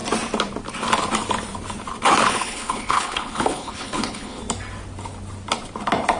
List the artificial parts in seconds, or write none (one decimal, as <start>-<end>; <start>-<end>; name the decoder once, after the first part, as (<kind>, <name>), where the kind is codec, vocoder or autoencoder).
2.3-4.4 (codec, HILCodec)